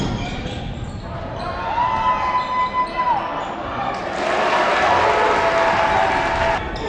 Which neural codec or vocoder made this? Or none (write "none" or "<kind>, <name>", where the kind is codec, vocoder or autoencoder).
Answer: none